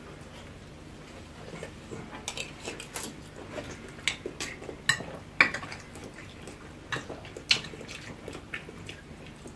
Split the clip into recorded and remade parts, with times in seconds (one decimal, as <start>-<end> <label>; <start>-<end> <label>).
0.0-9.6 recorded